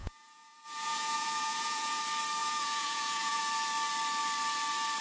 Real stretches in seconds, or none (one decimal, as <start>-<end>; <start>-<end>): 2.0-2.4; 3.4-5.0